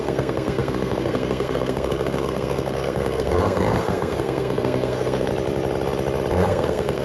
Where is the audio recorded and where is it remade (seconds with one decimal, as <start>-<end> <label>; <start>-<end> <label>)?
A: 0.0-5.3 remade; 5.3-6.3 recorded; 6.3-7.0 remade